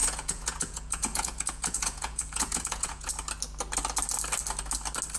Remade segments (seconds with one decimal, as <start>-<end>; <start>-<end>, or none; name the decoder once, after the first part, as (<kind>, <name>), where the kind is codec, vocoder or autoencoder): 0.0-3.1 (vocoder, Vocos)